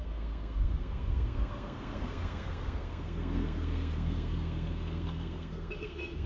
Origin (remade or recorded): remade